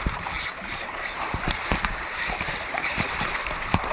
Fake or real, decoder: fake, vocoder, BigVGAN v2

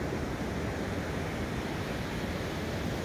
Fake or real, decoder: real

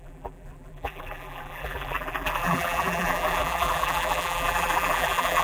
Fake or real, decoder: fake, vocoder, BigVGAN v2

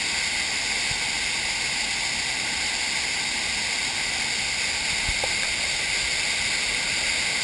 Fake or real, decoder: real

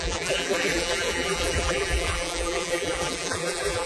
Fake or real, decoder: fake, vocoder, BigVGAN v2